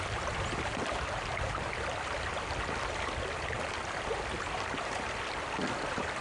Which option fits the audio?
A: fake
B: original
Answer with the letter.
B